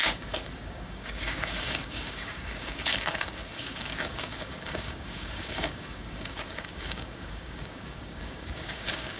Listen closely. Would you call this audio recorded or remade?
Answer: remade